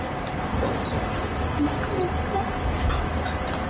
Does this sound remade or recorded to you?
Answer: recorded